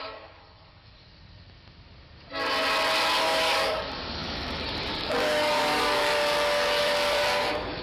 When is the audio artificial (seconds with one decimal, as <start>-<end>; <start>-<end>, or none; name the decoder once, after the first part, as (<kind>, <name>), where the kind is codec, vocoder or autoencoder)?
0.0-1.0 (codec, DAC); 3.2-7.8